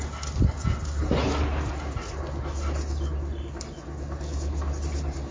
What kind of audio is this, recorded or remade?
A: recorded